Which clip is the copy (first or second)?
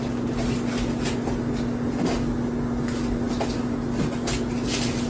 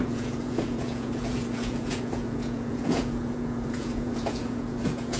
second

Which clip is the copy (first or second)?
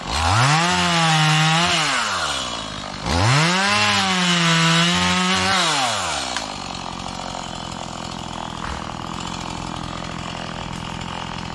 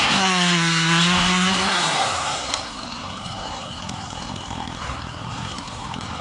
second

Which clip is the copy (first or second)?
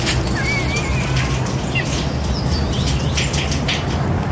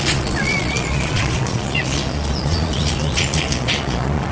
second